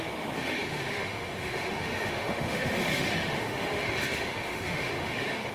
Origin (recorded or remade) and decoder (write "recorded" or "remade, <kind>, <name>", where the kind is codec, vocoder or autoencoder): remade, autoencoder, DAC-VAE